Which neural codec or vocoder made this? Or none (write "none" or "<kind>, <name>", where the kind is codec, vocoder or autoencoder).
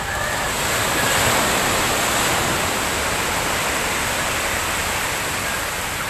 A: none